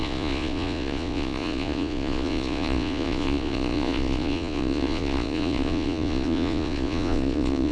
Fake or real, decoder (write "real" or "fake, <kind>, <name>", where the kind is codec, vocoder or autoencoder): fake, vocoder, Vocos